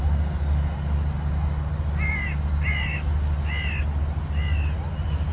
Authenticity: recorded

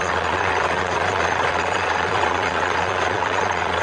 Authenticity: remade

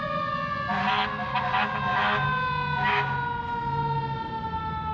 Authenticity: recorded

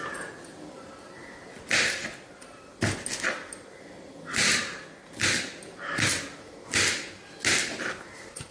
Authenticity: recorded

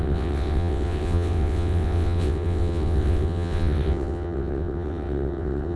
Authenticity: remade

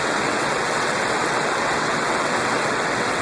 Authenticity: remade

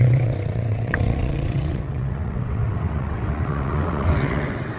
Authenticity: remade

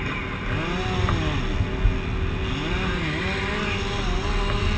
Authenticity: recorded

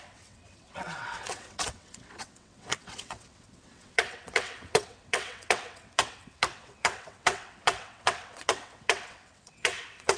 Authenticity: remade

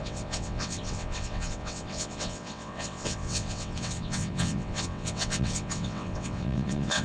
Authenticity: remade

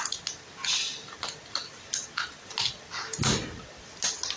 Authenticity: recorded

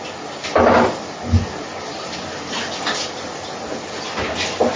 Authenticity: recorded